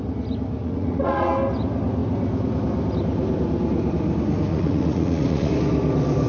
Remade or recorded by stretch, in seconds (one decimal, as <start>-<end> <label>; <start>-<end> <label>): 0.0-0.6 recorded; 0.6-1.3 remade; 1.3-4.5 recorded; 4.5-5.5 remade; 5.5-6.3 recorded